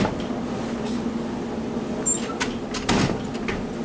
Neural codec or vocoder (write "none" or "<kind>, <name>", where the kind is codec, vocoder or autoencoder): none